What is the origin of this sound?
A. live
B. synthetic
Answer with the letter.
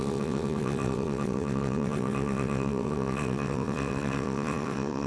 B